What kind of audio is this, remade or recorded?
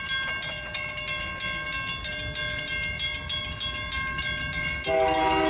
recorded